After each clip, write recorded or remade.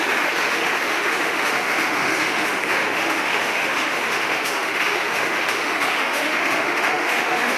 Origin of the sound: remade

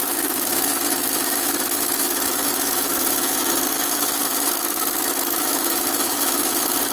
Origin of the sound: remade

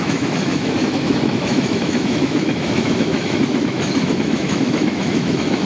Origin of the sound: remade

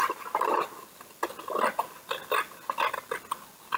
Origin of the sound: recorded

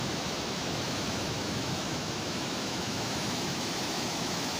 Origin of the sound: remade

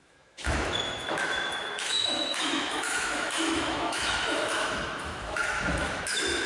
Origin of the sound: remade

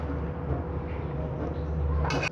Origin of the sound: recorded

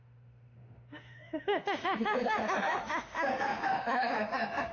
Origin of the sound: remade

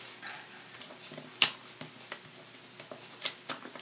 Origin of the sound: recorded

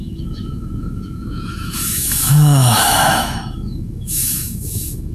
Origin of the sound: remade